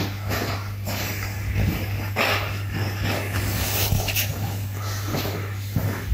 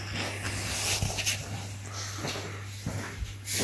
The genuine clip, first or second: second